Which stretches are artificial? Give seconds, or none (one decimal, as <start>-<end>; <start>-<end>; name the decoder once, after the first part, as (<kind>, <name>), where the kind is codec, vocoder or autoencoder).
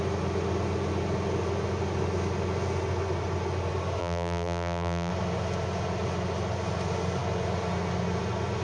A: 4.0-5.1 (vocoder, BigVGAN v2)